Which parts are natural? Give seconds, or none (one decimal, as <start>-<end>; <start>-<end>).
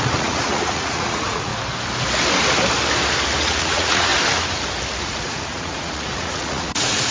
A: 1.5-3.4; 4.1-5.0